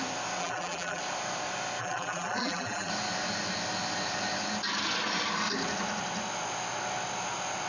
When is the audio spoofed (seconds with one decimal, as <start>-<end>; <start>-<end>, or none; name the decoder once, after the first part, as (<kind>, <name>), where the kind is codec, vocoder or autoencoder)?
0.4-1.0 (vocoder, BigVGAN v2); 1.8-2.9